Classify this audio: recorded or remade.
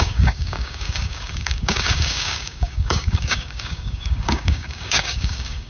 remade